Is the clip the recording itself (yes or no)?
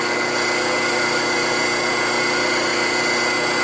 yes